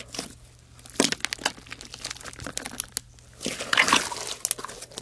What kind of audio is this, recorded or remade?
recorded